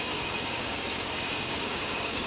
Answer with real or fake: fake